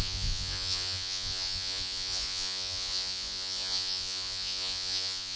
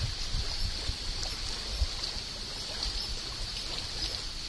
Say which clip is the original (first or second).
second